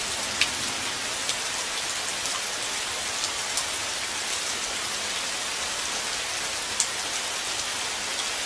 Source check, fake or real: real